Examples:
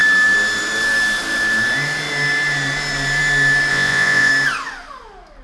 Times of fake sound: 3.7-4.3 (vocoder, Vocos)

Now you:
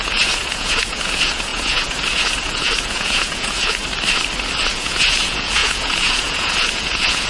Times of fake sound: 0.0-3.8 (vocoder, Vocos); 4.7-7.3

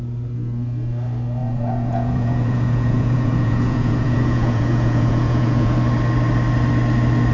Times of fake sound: 1.4-5.8 (vocoder, Vocos)

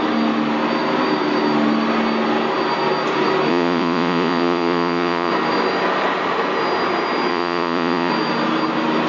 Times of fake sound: 3.5-5.3 (vocoder, Vocos); 7.3-8.1

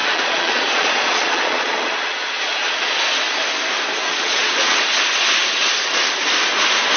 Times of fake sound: 0.0-3.0 (vocoder, Vocos); 4.0-4.8

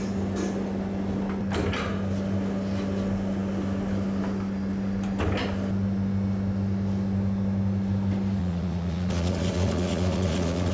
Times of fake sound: 8.4-10.7 (vocoder, Vocos)

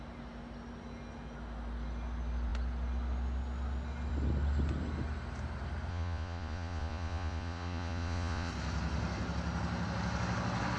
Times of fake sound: 5.9-8.5 (vocoder, Vocos)

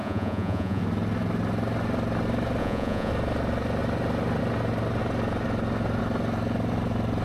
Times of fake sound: 0.0-0.8 (vocoder, Vocos); 2.6-3.1